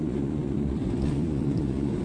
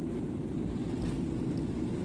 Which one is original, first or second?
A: second